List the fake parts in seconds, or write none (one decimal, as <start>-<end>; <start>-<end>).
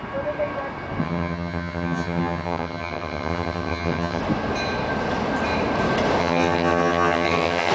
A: 1.0-4.2; 6.2-7.7